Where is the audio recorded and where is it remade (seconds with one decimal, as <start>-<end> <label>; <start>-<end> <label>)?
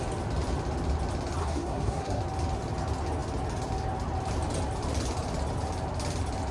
0.0-1.4 recorded; 1.4-2.2 remade; 2.2-6.5 recorded